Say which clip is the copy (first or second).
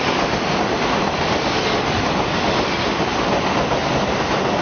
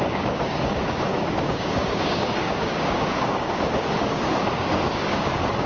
second